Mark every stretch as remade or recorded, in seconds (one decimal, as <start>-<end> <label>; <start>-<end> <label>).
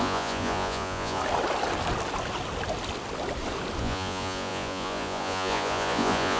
0.0-1.2 remade; 1.2-3.8 recorded; 3.8-6.4 remade